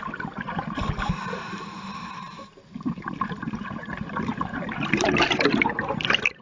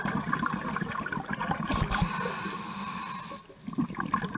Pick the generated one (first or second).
first